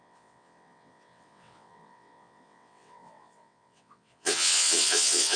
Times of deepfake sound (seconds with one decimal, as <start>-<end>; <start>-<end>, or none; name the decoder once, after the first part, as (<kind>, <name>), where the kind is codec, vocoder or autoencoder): 0.0-5.4 (vocoder, WaveNeXt)